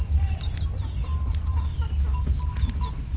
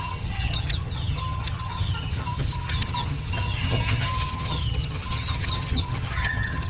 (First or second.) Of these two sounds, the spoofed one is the second